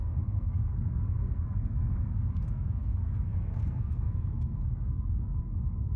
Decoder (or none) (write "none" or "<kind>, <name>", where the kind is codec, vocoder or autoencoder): codec, SNAC